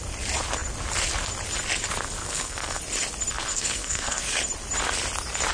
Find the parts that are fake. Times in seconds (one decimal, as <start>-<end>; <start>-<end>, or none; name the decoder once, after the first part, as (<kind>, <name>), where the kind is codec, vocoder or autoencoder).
2.2-2.8 (codec, SNAC); 3.5-4.3